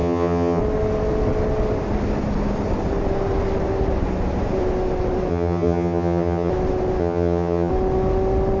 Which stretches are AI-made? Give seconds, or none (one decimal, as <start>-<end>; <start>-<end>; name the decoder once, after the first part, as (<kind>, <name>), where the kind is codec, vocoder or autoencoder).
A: 0.0-0.6 (vocoder, HiFi-GAN); 5.3-6.5; 7.0-7.7